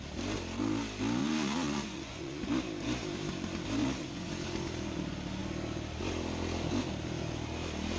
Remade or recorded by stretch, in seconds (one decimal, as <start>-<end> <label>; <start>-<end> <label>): 0.0-1.2 recorded; 1.2-2.4 remade; 2.4-3.8 recorded; 3.8-4.3 remade; 4.3-8.0 recorded

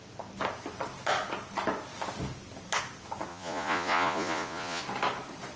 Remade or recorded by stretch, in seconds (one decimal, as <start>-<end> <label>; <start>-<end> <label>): 0.0-3.3 recorded; 3.3-4.8 remade; 4.8-5.6 recorded